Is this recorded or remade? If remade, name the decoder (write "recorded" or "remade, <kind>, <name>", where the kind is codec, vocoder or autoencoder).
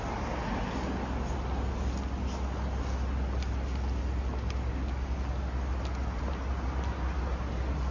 recorded